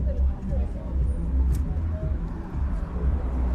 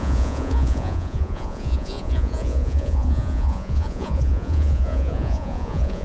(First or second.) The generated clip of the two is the second